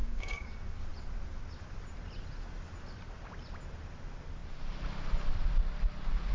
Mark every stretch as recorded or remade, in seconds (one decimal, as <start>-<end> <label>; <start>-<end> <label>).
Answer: 0.0-0.5 remade; 0.5-6.3 recorded